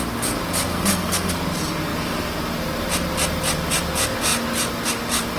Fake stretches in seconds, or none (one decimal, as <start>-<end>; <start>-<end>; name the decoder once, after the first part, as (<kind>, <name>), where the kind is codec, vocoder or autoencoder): 0.7-1.3 (codec, SNAC)